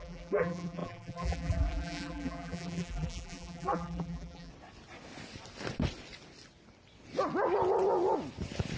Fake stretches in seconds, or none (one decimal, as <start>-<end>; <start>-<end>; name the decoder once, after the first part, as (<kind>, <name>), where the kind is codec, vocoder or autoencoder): 0.0-4.5 (vocoder, BigVGAN v2)